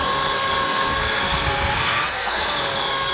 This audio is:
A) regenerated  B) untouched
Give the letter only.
A